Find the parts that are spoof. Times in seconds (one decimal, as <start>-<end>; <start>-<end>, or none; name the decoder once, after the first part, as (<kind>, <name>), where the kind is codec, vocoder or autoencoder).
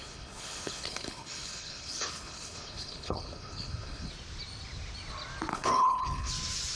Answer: 0.0-4.1 (codec, HILCodec); 5.5-6.3